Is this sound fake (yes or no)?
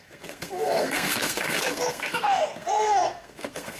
yes